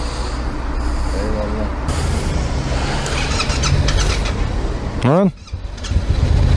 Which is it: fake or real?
real